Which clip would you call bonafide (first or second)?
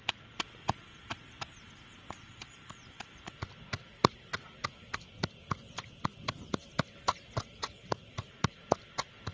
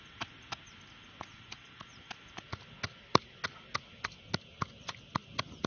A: second